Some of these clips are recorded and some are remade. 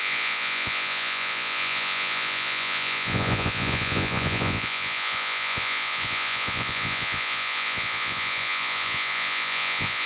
remade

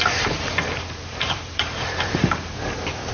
remade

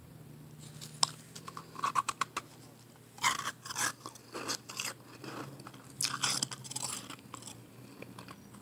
recorded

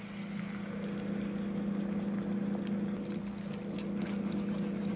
recorded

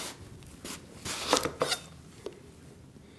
recorded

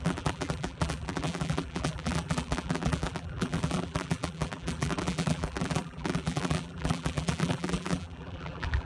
remade